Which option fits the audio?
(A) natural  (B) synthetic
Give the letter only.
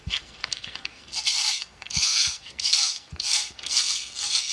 B